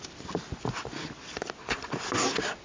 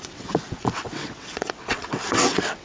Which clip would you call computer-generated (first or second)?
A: second